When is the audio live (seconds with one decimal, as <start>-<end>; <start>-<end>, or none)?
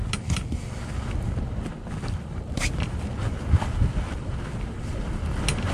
0.0-5.7